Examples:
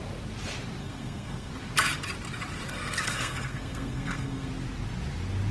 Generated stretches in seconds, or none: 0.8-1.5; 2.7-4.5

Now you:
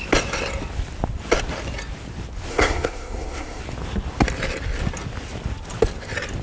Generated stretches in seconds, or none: 2.5-3.6

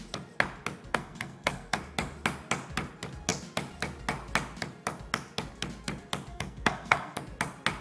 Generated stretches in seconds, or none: 0.9-1.8; 6.3-7.2